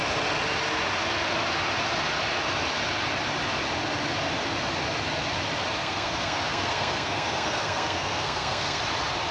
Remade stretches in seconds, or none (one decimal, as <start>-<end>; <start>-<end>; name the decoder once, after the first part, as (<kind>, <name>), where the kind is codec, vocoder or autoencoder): 5.8-8.8 (codec, SNAC)

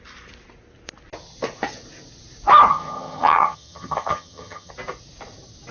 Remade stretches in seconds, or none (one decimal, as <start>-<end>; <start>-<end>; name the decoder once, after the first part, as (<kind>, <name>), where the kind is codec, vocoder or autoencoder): 2.7-4.7 (vocoder, HiFi-GAN)

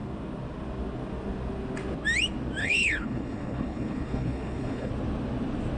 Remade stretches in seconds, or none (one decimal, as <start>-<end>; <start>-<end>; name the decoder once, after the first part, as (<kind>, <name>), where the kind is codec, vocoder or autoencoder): 2.6-4.9 (codec, HILCodec)

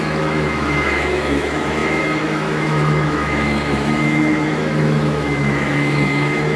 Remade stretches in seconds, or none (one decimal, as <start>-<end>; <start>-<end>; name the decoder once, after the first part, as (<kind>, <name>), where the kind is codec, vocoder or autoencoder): 0.0-6.6 (autoencoder, DAC-VAE)

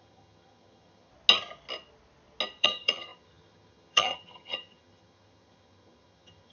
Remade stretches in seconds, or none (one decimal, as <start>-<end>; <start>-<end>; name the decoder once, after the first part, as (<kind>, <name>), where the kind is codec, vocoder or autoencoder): 0.0-1.1 (vocoder, HiFi-GAN); 2.6-6.5

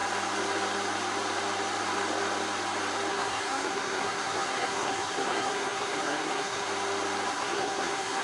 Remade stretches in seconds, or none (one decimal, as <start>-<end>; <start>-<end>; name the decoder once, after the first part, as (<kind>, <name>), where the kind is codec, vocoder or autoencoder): 3.1-6.7 (codec, SNAC); 7.3-8.2

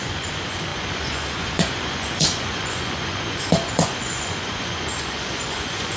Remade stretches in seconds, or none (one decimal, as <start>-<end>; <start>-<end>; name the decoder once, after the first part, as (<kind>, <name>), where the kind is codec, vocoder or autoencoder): 0.0-6.0 (vocoder, Vocos)